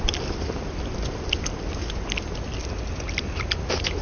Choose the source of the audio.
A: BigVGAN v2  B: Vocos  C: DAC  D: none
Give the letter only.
D